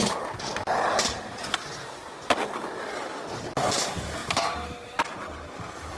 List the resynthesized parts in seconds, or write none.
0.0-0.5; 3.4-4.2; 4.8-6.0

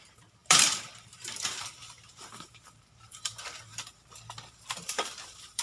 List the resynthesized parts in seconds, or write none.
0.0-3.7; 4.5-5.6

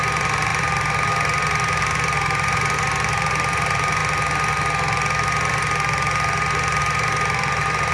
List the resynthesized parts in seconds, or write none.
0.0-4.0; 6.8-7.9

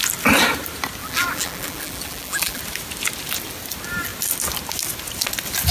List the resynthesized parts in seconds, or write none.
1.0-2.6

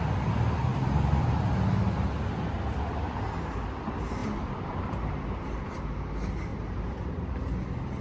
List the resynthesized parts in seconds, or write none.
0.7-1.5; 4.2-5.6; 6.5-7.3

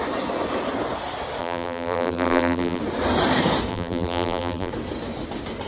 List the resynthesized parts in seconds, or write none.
1.4-2.8; 3.7-4.7